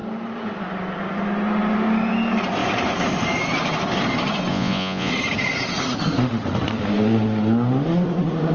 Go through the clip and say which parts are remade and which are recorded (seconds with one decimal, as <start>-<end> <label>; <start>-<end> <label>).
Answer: 0.0-4.5 recorded; 4.5-5.1 remade; 5.1-8.5 recorded

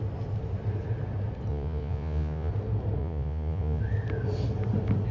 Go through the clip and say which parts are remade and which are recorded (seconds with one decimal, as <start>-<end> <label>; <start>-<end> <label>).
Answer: 0.0-1.5 recorded; 1.5-2.5 remade; 2.5-3.0 recorded; 3.0-3.8 remade; 3.8-5.1 recorded

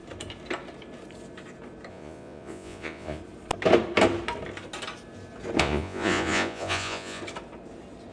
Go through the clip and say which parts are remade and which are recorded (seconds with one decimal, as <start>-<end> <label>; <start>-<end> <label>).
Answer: 0.0-1.9 recorded; 1.9-3.2 remade; 3.2-5.6 recorded; 5.6-7.2 remade; 7.2-8.1 recorded

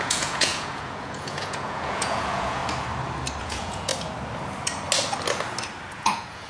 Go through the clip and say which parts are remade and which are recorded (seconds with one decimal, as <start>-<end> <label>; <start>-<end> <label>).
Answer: 0.0-2.6 remade; 2.6-3.4 recorded; 3.4-3.9 remade; 3.9-5.9 recorded; 5.9-6.5 remade